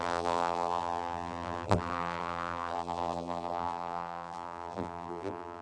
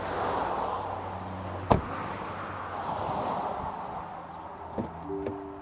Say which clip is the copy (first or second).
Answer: first